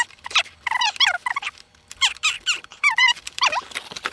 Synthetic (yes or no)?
yes